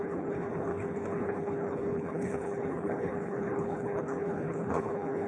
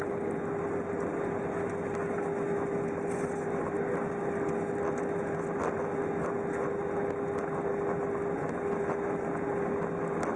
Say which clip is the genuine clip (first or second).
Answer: second